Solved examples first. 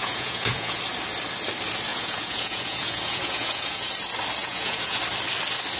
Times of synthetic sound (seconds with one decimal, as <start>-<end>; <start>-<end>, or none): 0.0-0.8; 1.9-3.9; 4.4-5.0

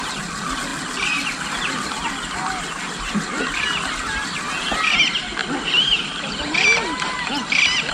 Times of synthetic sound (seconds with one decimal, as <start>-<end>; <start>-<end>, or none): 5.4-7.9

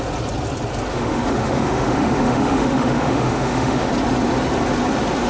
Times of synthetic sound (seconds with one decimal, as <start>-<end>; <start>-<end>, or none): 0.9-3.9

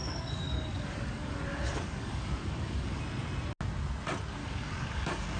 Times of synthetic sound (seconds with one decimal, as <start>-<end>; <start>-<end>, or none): 0.0-3.0; 4.4-5.4